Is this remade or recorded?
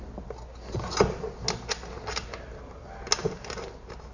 recorded